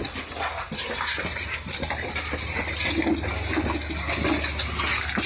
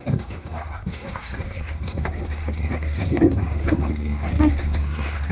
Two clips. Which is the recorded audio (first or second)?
first